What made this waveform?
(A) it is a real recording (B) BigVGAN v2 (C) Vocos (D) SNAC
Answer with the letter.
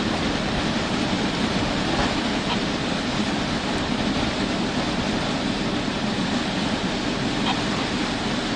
B